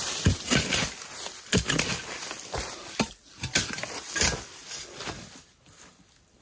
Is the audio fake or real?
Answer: real